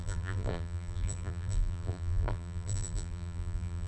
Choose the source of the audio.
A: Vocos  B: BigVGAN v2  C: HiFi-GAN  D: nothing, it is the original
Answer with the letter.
B